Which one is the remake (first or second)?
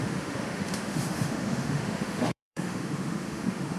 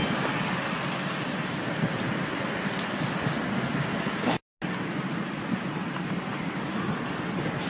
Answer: first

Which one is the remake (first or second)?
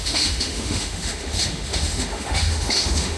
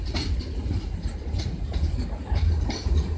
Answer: first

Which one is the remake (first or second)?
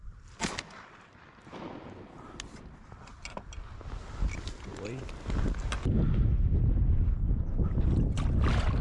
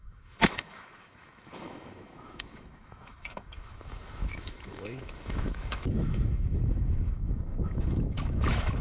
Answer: second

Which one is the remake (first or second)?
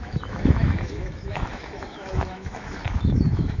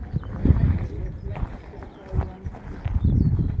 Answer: first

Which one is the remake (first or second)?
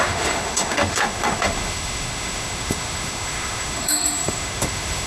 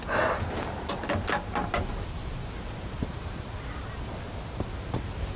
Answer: first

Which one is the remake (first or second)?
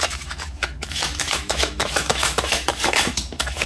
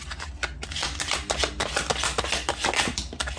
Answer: first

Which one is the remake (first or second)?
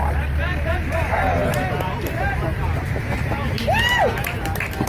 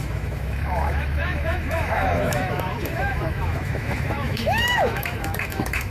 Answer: second